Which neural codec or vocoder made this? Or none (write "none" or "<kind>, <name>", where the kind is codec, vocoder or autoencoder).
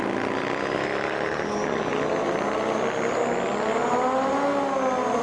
none